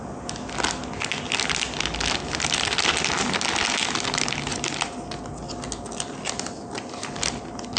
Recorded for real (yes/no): yes